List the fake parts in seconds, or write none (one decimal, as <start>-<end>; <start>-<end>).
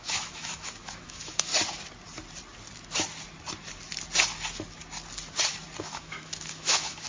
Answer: 0.0-1.5; 5.8-7.1